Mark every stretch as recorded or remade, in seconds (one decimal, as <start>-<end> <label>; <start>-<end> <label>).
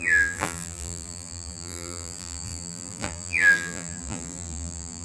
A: 0.0-5.0 remade